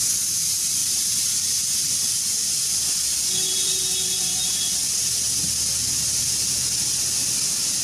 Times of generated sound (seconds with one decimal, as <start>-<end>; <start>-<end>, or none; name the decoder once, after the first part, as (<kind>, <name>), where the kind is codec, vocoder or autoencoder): 0.8-5.5 (vocoder, BigVGAN v2)